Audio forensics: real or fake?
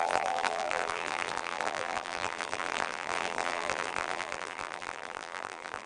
fake